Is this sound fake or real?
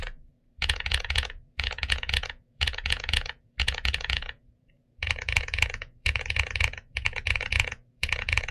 fake